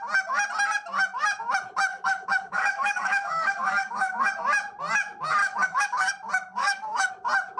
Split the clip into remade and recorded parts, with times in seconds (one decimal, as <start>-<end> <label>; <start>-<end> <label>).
0.0-1.9 recorded; 1.9-4.3 remade; 4.3-5.4 recorded; 5.4-6.1 remade; 6.1-6.6 recorded; 6.6-7.1 remade; 7.1-7.6 recorded